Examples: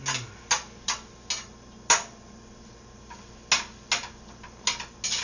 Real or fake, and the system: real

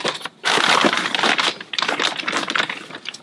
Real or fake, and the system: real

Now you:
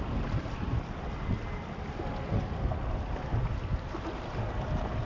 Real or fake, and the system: real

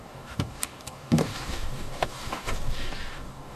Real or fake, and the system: fake, codec, DAC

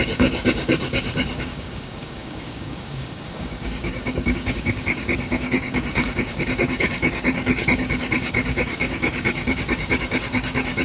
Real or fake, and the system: fake, codec, DAC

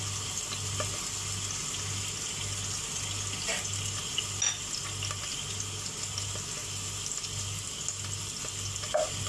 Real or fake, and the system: real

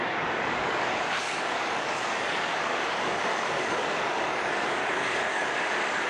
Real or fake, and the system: fake, codec, DAC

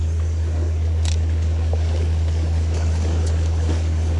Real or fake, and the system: fake, codec, DAC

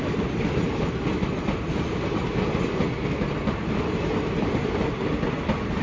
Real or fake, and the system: real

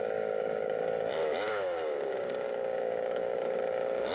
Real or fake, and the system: fake, codec, DAC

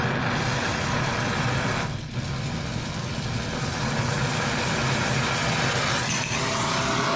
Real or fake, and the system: real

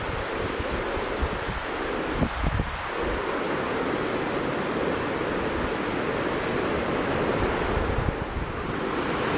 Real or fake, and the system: real